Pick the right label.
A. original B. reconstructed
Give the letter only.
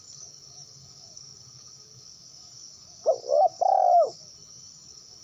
B